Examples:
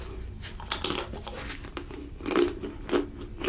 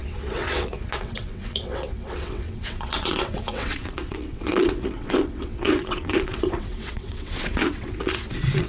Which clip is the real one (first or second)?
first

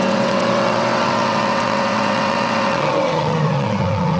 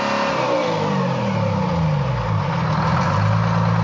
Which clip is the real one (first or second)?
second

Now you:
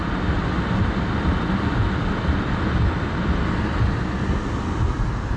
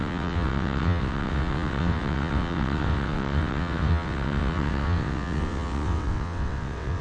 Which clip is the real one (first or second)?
first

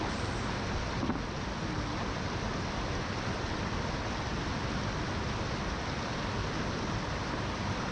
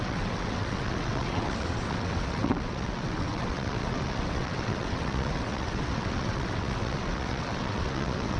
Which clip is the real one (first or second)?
first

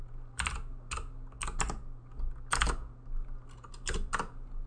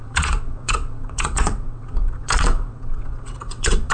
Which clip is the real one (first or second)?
first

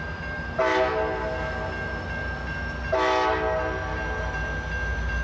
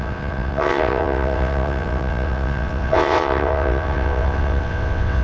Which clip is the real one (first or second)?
first